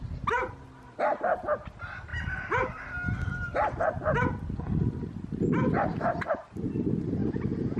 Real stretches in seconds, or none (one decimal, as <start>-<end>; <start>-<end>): 0.0-7.8